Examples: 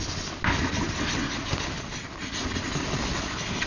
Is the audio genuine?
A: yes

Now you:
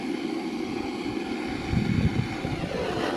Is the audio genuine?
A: yes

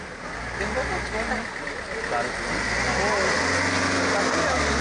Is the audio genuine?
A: yes